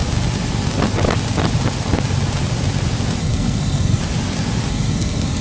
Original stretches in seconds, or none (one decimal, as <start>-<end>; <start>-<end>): 0.0-3.2; 4.0-4.7